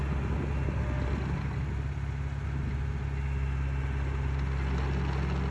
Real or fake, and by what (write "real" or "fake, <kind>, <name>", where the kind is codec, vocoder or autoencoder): real